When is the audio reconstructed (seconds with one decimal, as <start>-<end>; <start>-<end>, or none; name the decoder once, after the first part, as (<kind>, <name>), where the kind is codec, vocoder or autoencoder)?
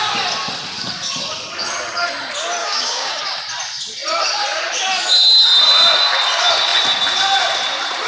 2.6-3.2 (codec, DAC)